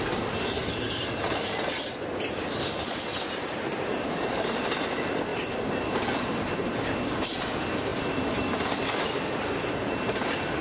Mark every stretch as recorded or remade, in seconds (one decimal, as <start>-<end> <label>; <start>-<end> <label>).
0.0-0.6 recorded; 0.6-1.8 remade; 1.8-3.1 recorded; 3.1-4.6 remade; 4.6-5.3 recorded; 5.3-7.2 remade; 7.2-10.6 recorded